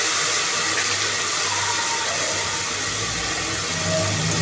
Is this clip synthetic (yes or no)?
no